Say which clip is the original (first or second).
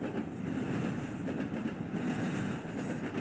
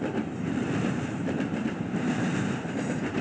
first